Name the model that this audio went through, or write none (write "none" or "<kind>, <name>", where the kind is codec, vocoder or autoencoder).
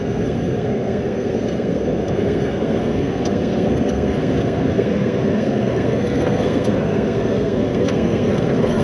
codec, SNAC